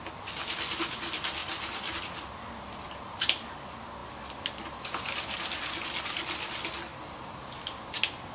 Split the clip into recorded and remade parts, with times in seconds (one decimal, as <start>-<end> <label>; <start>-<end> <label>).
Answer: 0.0-6.9 recorded; 6.9-7.4 remade; 7.4-8.3 recorded